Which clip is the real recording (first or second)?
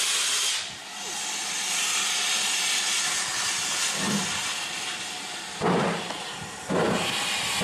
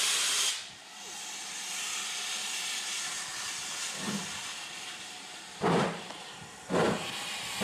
first